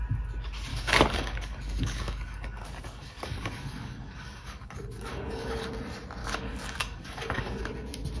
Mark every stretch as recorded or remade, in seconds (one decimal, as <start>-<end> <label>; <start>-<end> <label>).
0.0-0.7 recorded; 0.7-5.6 remade; 5.6-6.2 recorded; 6.2-7.6 remade; 7.6-8.2 recorded